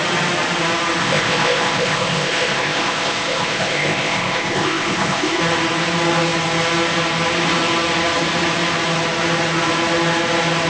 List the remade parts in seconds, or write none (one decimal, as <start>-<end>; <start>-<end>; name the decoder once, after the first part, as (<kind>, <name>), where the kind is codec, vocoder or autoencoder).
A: 1.0-5.4 (codec, ZipCodec)